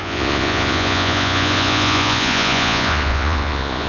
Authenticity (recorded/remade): remade